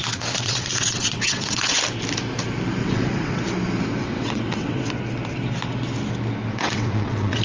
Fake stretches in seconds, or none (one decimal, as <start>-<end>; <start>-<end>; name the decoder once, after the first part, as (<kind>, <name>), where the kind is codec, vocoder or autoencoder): 0.0-1.8 (vocoder, WaveNeXt); 2.8-3.4; 4.0-4.8; 6.5-7.4